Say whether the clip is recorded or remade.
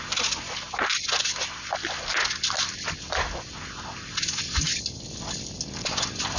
recorded